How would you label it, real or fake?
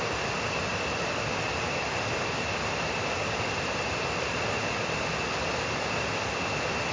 real